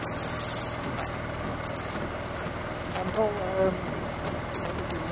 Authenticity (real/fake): real